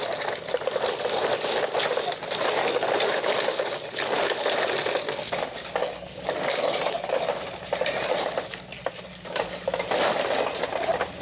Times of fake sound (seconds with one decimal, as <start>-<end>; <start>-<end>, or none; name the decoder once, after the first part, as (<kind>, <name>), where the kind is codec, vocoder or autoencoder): 5.8-7.3 (codec, DAC); 9.1-9.8